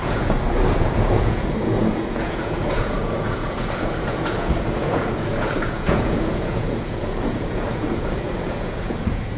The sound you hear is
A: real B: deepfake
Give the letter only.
B